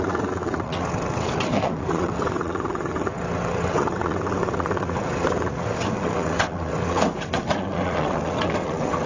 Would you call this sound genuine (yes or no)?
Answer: no